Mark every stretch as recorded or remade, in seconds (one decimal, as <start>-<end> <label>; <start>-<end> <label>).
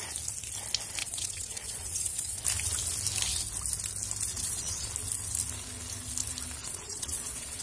0.0-1.0 recorded; 1.0-2.4 remade; 2.4-4.3 recorded; 4.3-4.9 remade; 4.9-6.6 recorded; 6.6-7.6 remade